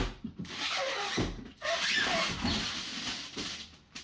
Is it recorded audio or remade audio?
recorded